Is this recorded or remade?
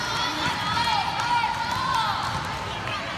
recorded